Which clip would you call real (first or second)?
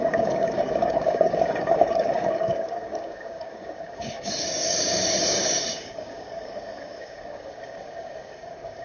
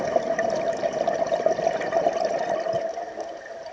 second